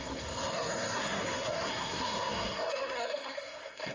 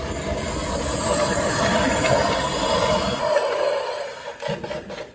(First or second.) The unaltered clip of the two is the second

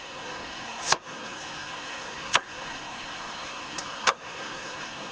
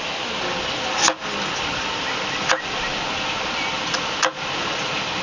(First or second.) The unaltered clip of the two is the second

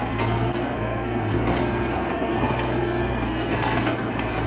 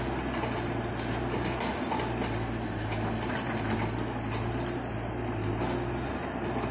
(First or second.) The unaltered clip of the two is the second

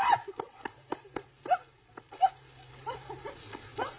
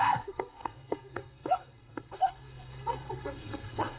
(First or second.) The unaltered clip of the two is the first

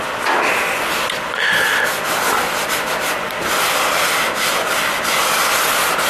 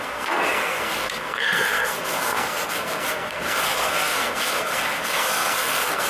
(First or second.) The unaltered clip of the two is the first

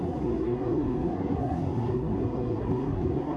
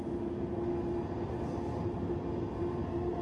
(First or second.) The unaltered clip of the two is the second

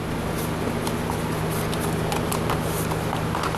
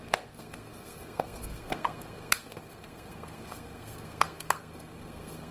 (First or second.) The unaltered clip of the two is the first